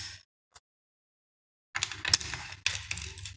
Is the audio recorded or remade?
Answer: recorded